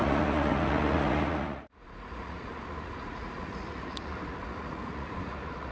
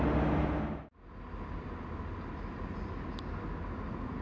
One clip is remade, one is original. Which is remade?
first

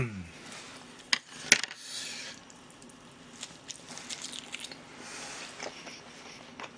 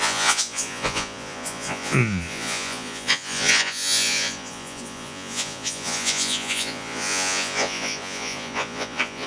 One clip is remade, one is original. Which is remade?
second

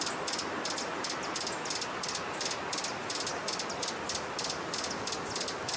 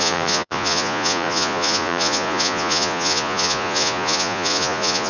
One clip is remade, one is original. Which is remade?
second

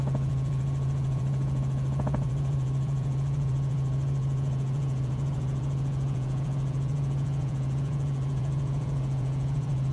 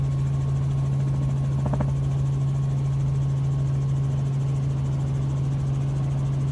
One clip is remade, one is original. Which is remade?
first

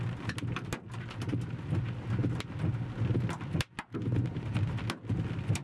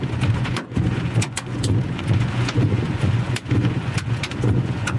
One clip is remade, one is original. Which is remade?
second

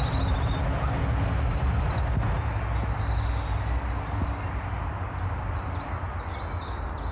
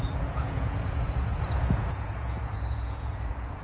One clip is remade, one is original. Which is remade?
second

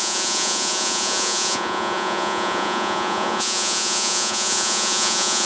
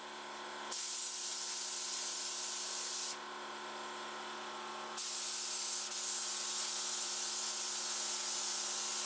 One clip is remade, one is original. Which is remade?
first